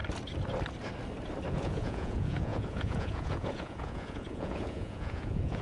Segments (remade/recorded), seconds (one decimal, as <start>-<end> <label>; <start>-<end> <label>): 0.0-1.5 recorded; 1.5-5.6 remade